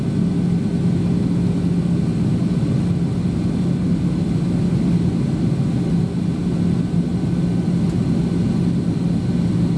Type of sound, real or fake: real